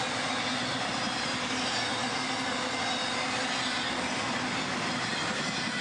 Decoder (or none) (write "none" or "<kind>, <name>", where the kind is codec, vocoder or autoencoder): none